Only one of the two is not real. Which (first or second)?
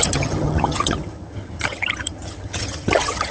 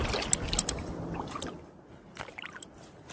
first